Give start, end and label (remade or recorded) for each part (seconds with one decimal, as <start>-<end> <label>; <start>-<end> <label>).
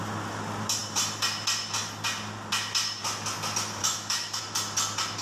0.0-3.8 recorded; 3.8-4.4 remade; 4.4-5.2 recorded